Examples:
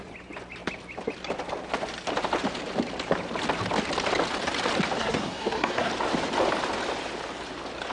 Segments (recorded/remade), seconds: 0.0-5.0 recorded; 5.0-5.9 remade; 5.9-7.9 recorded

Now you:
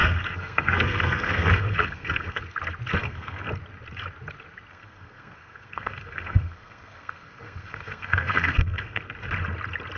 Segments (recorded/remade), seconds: 0.0-2.4 remade; 2.4-3.0 recorded; 3.0-3.5 remade; 3.5-4.7 recorded; 4.7-9.0 remade; 9.0-10.0 recorded